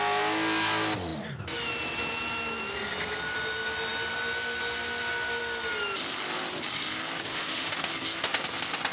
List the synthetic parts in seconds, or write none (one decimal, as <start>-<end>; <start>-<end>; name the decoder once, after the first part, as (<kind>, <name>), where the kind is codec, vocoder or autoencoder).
7.3-7.9 (autoencoder, DAC-VAE)